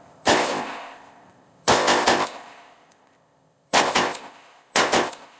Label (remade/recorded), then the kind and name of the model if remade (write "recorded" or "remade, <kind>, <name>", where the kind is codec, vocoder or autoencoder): remade, codec, ZipCodec